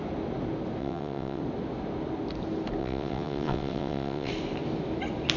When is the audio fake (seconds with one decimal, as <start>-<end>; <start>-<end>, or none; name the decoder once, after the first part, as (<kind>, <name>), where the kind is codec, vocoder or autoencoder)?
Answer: 0.8-1.4 (vocoder, WaveNeXt); 2.8-4.3